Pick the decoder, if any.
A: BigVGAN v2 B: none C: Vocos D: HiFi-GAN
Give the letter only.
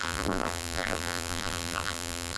A